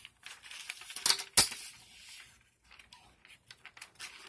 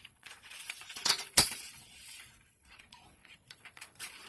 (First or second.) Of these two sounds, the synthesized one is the second